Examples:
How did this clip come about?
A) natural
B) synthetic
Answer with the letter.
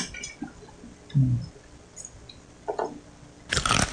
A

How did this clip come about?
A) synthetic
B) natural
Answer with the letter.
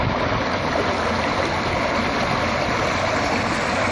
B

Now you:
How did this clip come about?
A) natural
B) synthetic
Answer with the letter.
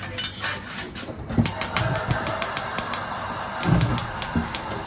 A